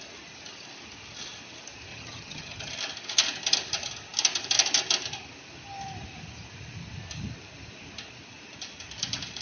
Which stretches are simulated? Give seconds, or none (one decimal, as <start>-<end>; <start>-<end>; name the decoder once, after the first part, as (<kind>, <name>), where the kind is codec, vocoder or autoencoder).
1.9-2.7 (vocoder, HiFi-GAN)